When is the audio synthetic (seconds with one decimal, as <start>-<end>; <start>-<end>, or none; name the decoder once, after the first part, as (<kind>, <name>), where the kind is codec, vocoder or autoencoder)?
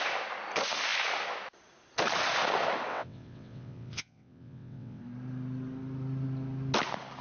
2.9-5.0 (vocoder, WaveNeXt)